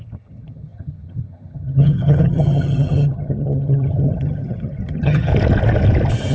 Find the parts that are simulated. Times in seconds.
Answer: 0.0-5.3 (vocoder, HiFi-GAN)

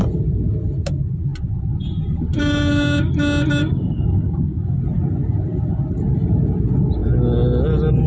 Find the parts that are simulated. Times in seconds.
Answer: 3.6-4.8 (codec, DAC)

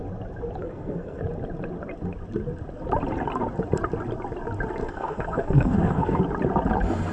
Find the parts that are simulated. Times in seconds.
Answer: 0.6-1.2 (codec, SNAC); 4.8-6.2

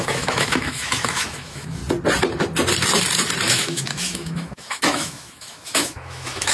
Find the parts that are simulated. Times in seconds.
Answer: 0.0-1.8 (autoencoder, DAC-VAE); 3.5-6.5

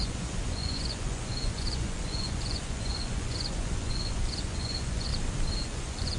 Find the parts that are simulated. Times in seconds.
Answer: 0.0-5.1 (vocoder, Vocos); 5.6-6.2

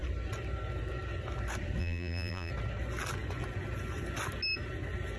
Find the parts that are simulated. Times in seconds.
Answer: 1.8-2.5 (vocoder, BigVGAN v2)

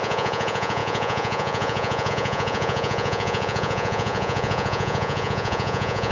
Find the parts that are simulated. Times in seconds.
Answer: 0.0-6.1 (vocoder, Vocos)

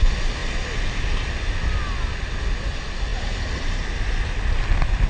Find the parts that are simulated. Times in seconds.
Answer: none